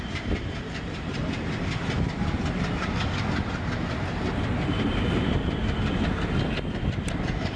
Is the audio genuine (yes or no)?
yes